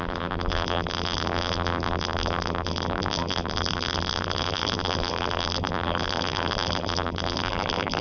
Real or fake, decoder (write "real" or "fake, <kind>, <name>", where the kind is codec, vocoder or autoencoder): fake, vocoder, BigVGAN v2